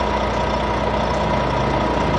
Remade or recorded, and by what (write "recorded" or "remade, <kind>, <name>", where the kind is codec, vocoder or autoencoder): recorded